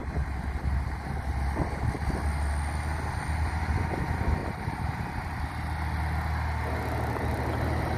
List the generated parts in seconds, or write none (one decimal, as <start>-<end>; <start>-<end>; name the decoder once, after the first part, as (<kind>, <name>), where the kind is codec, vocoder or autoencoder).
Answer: 4.4-5.5 (vocoder, BigVGAN v2)